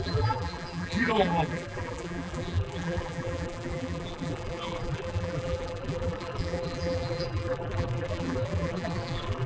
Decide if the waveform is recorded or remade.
remade